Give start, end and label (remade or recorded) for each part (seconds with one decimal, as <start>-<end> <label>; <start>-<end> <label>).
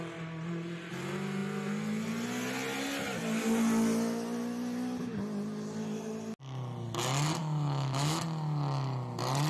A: 0.0-7.4 recorded; 7.4-8.2 remade; 8.2-9.5 recorded